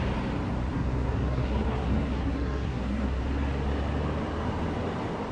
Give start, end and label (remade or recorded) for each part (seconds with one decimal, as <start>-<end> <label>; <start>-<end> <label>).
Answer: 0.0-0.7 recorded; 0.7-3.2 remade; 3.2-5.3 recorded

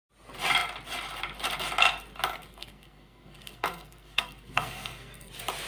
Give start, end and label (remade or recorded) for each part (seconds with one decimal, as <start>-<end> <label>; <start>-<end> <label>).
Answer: 0.0-2.3 recorded; 2.3-5.3 remade; 5.3-5.7 recorded

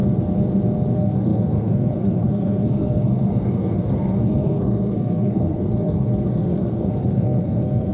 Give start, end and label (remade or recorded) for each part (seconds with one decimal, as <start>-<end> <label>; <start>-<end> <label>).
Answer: 0.0-0.9 recorded; 0.9-7.9 remade